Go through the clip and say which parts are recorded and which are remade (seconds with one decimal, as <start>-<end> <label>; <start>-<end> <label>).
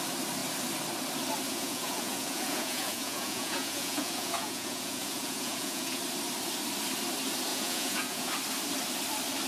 0.0-1.5 recorded; 1.5-6.0 remade; 6.0-7.5 recorded; 7.5-8.3 remade; 8.3-9.5 recorded